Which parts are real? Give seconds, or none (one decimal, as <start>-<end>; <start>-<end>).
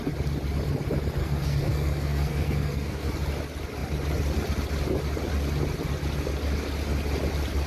0.0-1.2; 3.1-7.7